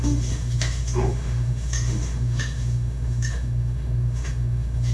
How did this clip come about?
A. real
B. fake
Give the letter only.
B